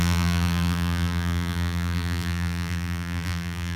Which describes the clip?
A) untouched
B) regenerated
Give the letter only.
B